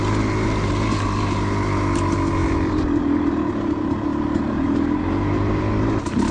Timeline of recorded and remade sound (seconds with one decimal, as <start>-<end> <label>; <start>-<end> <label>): 0.0-4.1 recorded; 4.1-4.7 remade; 4.7-6.3 recorded